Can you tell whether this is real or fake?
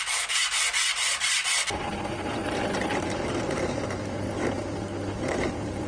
real